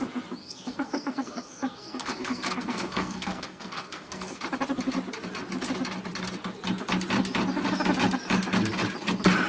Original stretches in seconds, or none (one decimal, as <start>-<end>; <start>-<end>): 0.0-0.4; 4.4-9.5